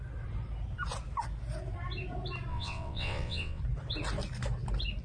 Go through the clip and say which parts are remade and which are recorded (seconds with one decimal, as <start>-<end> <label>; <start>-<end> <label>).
0.0-2.5 recorded; 2.5-3.6 remade; 3.6-5.0 recorded